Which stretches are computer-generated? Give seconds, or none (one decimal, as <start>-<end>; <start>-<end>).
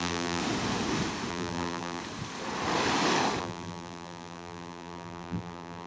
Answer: 0.0-0.4; 1.3-2.0; 3.4-5.9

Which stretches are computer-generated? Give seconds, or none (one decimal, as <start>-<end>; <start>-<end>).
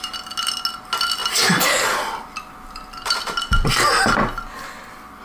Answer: none